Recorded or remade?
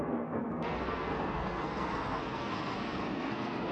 remade